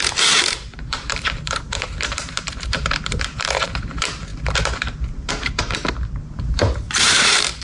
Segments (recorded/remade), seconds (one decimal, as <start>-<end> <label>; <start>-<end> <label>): 0.0-5.8 remade; 5.8-6.4 recorded; 6.4-7.6 remade